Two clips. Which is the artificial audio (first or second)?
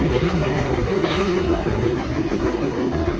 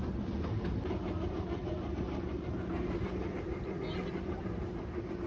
first